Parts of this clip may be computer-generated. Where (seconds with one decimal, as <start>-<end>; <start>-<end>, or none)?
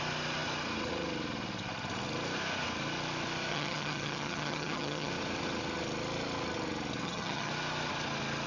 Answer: 3.5-5.1; 7.0-7.5